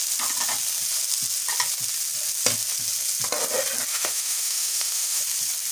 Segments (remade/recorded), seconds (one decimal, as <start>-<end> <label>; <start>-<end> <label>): 0.0-3.9 recorded; 3.9-5.2 remade; 5.2-5.7 recorded